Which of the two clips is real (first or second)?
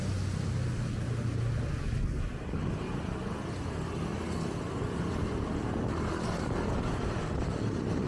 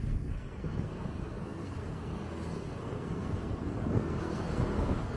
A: first